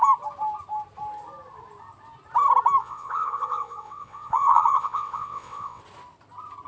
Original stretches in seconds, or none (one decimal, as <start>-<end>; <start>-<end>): 0.0-2.8; 5.8-6.7